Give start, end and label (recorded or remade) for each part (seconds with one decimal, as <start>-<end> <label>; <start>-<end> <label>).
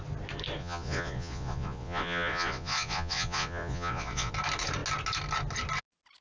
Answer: 0.0-0.6 recorded; 0.6-4.3 remade; 4.3-6.2 recorded